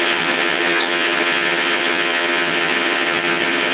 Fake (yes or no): yes